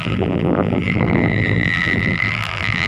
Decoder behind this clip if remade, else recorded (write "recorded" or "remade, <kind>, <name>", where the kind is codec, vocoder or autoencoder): remade, vocoder, BigVGAN v2